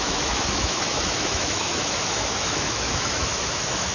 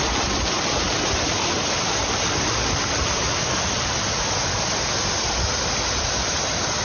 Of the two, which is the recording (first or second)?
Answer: second